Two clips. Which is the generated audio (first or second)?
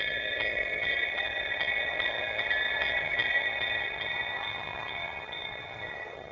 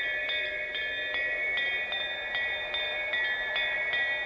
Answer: first